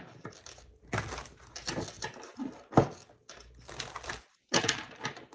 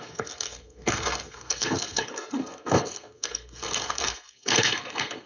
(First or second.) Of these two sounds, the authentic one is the first